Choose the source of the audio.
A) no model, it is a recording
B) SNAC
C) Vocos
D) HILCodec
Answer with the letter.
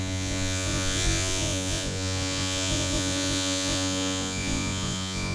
C